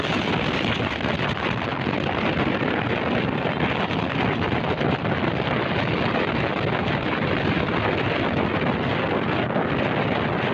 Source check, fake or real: real